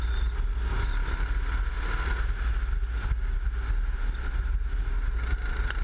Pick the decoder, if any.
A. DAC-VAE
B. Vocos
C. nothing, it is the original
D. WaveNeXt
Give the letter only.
C